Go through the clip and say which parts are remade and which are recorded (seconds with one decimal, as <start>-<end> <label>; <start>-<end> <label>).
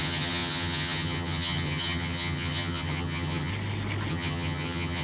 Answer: 0.0-3.5 remade; 3.5-4.1 recorded; 4.1-5.0 remade